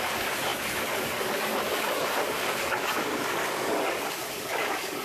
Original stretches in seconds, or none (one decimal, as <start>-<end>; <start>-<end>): none